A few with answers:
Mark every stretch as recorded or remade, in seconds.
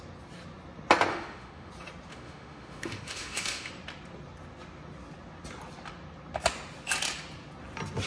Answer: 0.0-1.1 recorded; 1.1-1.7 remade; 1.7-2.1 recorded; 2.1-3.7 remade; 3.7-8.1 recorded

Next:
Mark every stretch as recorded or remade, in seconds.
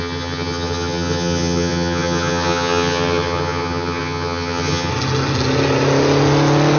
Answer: 0.0-4.9 remade; 4.9-6.8 recorded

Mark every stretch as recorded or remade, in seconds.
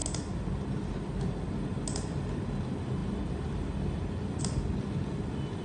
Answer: 0.0-5.6 recorded